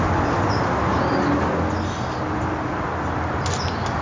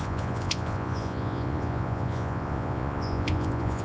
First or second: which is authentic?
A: first